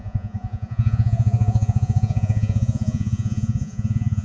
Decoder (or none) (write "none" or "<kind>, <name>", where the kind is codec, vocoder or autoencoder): vocoder, Vocos